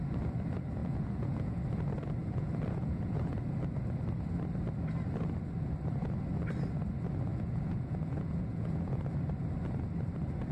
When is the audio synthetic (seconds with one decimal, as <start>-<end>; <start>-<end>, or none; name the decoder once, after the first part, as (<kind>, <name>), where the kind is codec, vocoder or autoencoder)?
0.8-1.6 (vocoder, Vocos); 2.2-3.4; 7.3-9.0